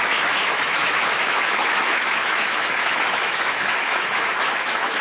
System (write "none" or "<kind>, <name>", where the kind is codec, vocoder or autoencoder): autoencoder, DAC-VAE